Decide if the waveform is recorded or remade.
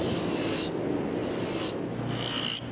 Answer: recorded